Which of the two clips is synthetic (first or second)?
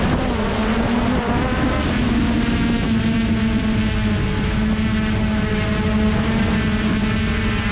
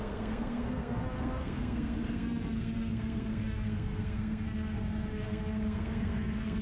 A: second